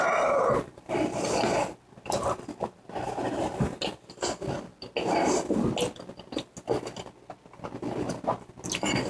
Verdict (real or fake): real